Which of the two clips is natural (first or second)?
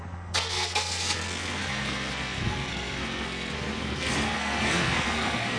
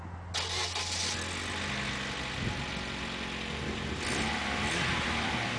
second